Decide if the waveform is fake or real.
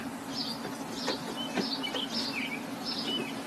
real